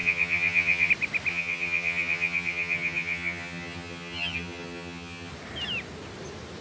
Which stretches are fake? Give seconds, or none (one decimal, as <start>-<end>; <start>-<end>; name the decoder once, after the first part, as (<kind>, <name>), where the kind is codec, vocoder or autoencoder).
0.0-0.9 (vocoder, HiFi-GAN); 1.3-5.3